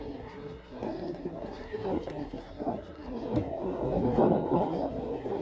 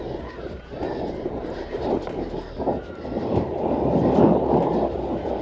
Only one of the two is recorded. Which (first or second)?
second